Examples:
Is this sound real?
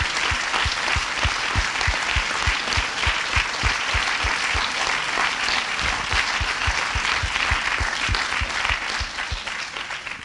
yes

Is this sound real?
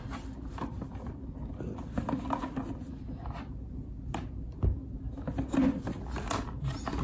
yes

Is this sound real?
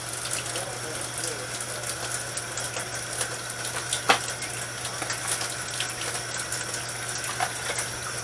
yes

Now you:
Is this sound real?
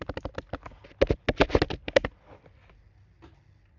yes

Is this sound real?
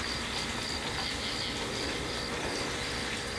yes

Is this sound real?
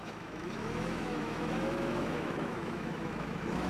no